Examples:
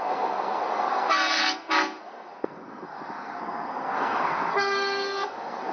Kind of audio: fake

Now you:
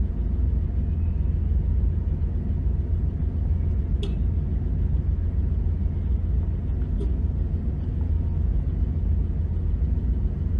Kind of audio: real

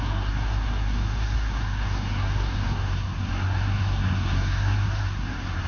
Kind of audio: fake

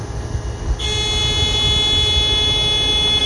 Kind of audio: real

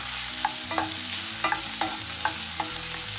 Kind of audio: real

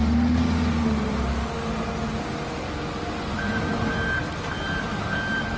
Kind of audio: real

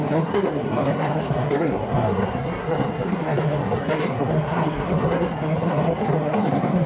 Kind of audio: fake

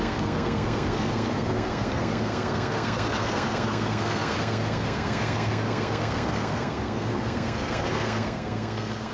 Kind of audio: fake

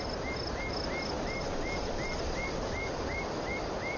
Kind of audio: real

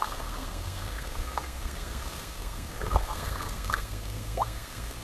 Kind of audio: fake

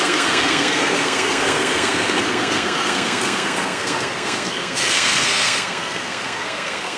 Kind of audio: fake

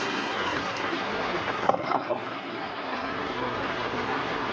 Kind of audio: fake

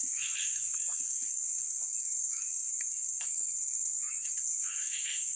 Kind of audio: fake